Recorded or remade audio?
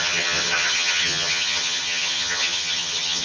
remade